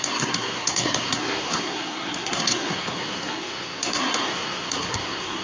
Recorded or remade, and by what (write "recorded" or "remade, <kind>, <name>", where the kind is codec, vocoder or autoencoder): remade, codec, SNAC